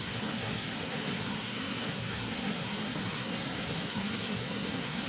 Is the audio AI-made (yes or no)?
yes